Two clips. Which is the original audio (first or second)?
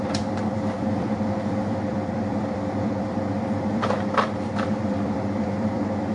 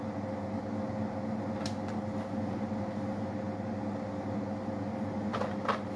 second